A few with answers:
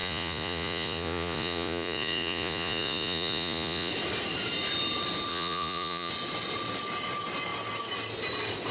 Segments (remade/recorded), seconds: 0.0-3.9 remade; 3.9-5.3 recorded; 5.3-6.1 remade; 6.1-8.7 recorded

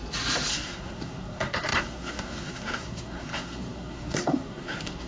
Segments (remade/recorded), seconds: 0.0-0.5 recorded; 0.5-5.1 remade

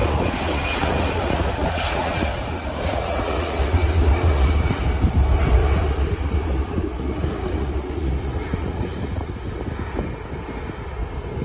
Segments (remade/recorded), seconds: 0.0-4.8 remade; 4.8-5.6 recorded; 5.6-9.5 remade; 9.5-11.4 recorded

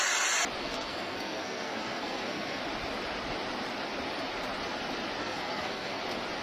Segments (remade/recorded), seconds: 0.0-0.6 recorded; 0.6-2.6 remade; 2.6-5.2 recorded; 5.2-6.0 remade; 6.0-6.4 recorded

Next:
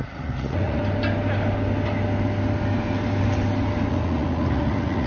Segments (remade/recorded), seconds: 0.0-0.8 remade; 0.8-3.9 recorded; 3.9-5.1 remade